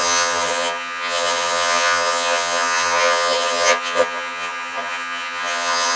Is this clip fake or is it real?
fake